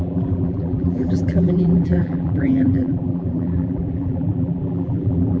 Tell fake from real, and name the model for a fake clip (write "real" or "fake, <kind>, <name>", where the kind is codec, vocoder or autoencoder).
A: fake, vocoder, BigVGAN v2